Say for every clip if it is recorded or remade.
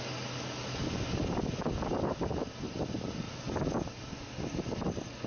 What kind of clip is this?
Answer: recorded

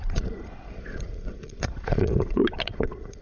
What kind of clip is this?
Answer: remade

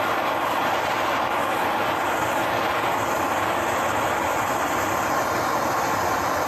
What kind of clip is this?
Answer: recorded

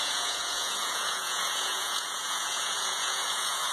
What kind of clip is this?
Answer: remade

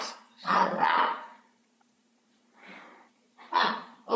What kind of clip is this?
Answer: remade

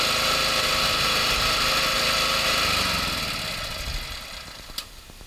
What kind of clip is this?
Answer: recorded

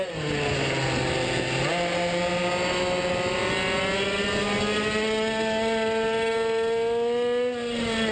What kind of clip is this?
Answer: recorded